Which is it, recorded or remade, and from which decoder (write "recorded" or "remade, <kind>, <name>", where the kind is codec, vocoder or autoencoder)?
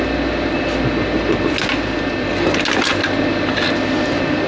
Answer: recorded